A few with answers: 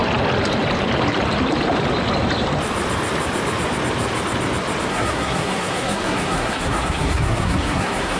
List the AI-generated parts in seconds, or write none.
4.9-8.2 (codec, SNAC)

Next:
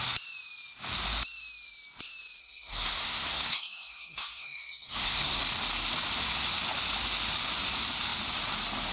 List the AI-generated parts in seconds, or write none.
2.4-5.4 (codec, SNAC)